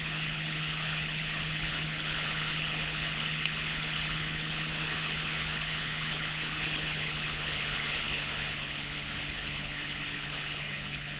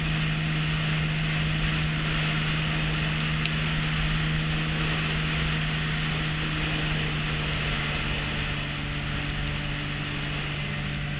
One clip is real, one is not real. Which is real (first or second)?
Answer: second